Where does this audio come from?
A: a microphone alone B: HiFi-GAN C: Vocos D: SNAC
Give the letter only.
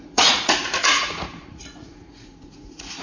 C